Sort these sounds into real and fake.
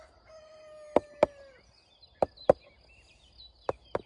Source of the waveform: real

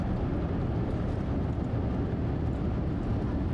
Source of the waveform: real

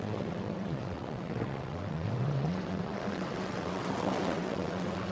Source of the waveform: fake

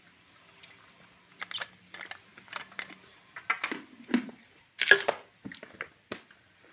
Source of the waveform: real